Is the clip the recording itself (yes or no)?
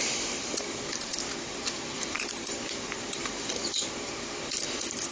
no